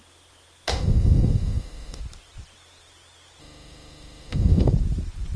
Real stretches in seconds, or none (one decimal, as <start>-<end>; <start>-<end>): 0.0-0.7; 2.0-3.4; 4.7-5.4